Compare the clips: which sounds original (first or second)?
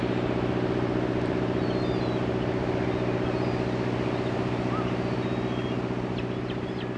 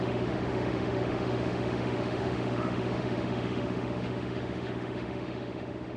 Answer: first